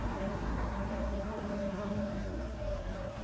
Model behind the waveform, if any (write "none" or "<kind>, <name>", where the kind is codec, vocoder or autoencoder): codec, SNAC